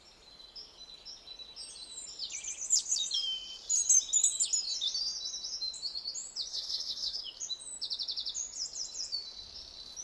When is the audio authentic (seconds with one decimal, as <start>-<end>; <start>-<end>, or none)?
0.0-6.5; 7.2-10.0